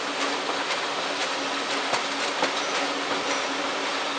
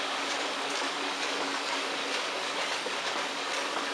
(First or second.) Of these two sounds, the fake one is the second